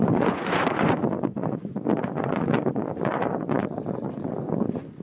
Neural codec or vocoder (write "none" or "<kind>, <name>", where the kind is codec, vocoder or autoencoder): vocoder, Vocos